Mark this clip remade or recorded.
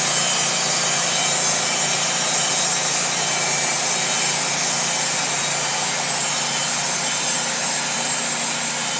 recorded